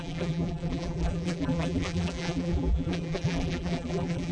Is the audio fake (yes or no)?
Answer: yes